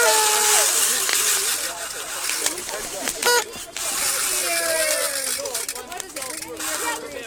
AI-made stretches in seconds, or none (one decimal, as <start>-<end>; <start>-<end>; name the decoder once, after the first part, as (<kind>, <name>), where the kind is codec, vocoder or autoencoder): none